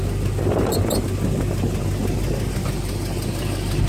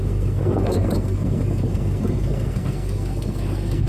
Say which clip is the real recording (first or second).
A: first